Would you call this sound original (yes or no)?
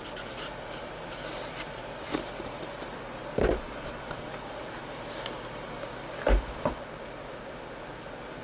no